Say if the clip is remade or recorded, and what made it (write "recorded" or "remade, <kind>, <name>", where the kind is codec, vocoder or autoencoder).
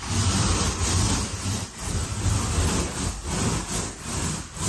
recorded